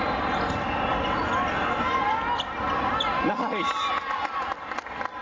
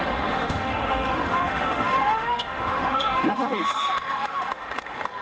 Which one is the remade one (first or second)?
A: second